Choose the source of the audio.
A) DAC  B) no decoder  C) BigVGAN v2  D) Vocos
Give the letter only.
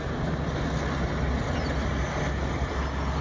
B